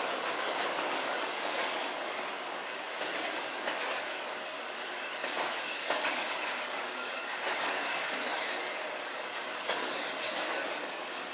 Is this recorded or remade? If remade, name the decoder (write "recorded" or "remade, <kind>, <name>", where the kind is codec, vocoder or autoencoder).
remade, codec, DAC